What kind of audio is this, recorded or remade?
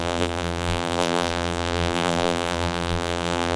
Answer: remade